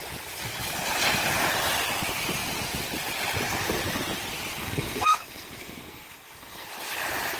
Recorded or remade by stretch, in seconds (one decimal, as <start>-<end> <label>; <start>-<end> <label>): 0.0-4.6 recorded; 4.6-6.7 remade; 6.7-7.4 recorded